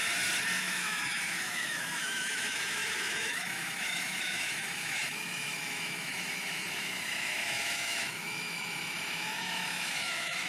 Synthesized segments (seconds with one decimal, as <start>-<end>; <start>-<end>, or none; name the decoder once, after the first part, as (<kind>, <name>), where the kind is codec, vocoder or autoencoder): 0.6-10.5 (autoencoder, DAC-VAE)